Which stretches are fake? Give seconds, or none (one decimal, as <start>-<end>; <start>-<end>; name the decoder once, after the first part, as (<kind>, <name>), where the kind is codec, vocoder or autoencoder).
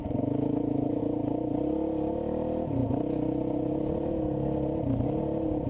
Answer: 0.0-1.0 (autoencoder, DAC-VAE)